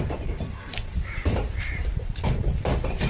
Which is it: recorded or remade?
recorded